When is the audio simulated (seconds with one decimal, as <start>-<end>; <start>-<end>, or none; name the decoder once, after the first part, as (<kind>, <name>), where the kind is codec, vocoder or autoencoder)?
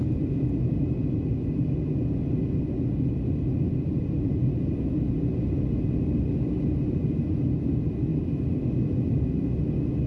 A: none